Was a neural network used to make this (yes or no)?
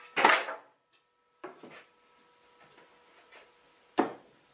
no